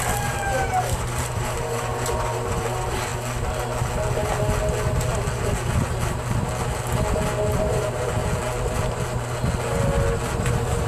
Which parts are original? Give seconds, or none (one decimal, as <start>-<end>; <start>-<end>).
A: 3.1-7.6; 8.2-10.4